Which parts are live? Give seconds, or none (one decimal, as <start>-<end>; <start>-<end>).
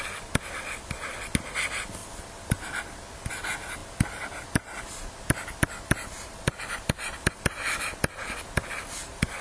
0.0-9.4